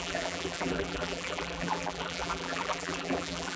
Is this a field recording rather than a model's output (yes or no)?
no